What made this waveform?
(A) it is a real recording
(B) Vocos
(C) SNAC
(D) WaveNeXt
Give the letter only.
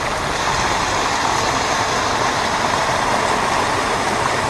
A